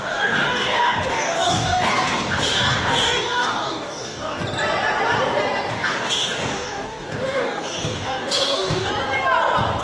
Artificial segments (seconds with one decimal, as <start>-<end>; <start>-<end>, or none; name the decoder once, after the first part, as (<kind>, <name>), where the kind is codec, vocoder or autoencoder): 0.0-4.4 (codec, DAC); 5.7-8.9